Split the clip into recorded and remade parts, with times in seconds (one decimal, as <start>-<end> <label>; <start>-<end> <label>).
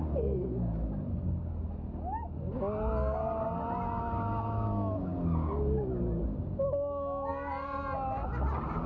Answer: 0.0-7.3 recorded; 7.3-7.8 remade; 7.8-8.9 recorded